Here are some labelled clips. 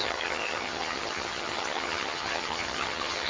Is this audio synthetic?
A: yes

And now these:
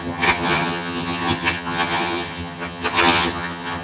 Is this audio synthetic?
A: yes